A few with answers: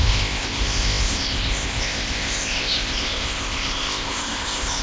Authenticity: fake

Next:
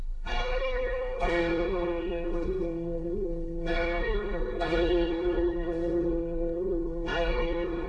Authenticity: fake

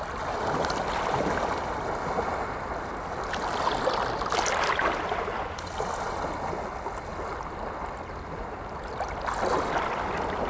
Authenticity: real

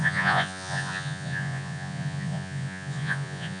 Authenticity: fake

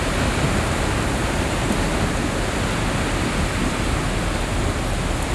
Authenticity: real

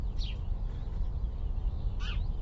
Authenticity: real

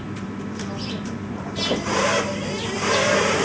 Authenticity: fake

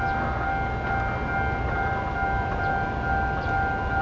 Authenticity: real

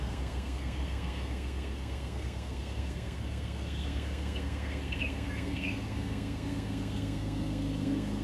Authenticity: fake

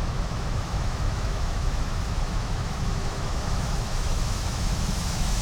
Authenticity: fake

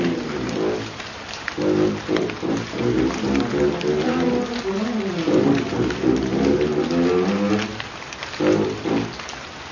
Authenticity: real